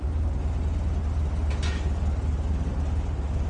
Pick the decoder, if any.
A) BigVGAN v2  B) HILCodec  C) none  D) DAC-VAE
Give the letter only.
C